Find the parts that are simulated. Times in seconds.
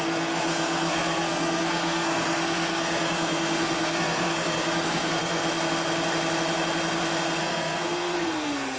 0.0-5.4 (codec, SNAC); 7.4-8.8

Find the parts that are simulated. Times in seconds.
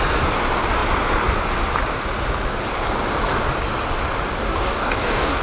4.4-5.4 (codec, DAC)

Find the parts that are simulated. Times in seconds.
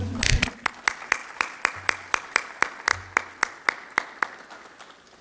1.2-2.3 (vocoder, BigVGAN v2)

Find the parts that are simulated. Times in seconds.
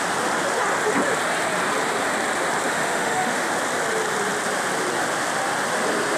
2.7-3.5 (autoencoder, DAC-VAE)